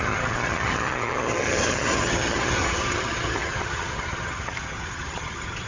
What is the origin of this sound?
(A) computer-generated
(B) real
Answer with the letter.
A